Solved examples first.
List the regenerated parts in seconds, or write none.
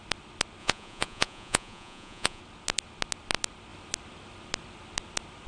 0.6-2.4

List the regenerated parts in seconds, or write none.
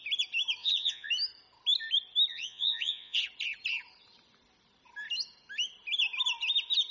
0.6-1.1; 2.3-3.2